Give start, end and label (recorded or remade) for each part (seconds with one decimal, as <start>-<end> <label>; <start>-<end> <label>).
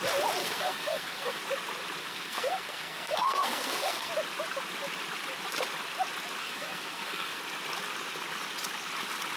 0.0-0.4 recorded; 0.4-1.4 remade; 1.4-2.0 recorded; 2.0-4.1 remade; 4.1-6.4 recorded; 6.4-7.4 remade; 7.4-9.4 recorded